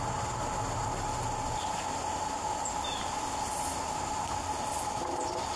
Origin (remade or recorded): recorded